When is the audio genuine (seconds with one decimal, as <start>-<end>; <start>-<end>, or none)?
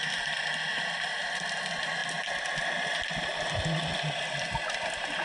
0.0-5.2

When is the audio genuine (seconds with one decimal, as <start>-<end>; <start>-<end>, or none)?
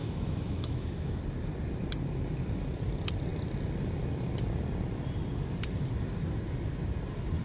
1.2-7.4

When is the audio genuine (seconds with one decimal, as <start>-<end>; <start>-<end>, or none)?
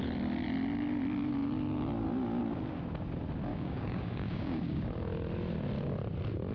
0.0-3.5; 4.8-6.5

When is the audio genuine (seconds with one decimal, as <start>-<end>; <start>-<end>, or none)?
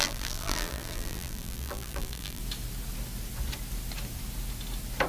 2.4-5.1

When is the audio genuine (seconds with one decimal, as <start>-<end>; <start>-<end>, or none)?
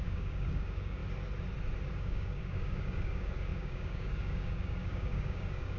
1.0-1.9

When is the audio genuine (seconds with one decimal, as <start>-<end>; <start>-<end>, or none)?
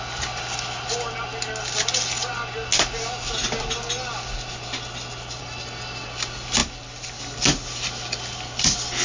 0.0-9.0